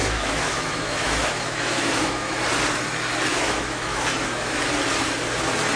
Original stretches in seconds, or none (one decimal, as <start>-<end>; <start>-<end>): 2.4-3.3; 4.6-5.8